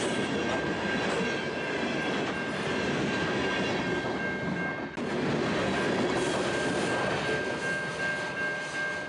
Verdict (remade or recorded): recorded